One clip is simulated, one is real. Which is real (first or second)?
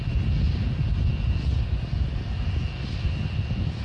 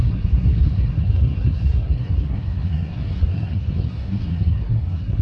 first